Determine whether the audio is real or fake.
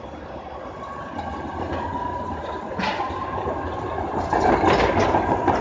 real